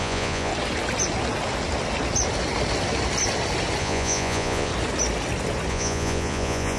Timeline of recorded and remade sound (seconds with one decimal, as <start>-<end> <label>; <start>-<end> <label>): 0.0-0.5 remade; 0.5-3.8 recorded; 3.8-4.7 remade; 4.7-5.7 recorded; 5.7-6.8 remade